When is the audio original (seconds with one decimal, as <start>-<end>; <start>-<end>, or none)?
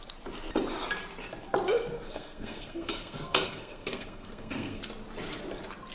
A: 0.0-1.9; 4.8-5.9